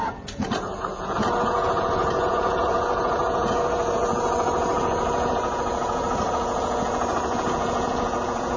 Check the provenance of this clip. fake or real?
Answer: fake